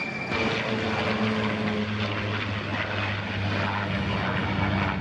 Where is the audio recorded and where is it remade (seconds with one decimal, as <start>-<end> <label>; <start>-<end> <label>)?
0.0-5.0 recorded